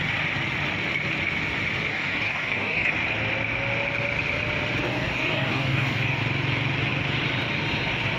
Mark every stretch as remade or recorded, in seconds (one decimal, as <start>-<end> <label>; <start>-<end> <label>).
0.0-1.9 recorded; 1.9-2.9 remade; 2.9-4.8 recorded; 4.8-6.2 remade; 6.2-8.2 recorded